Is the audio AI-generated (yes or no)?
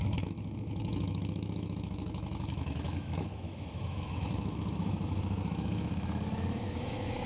yes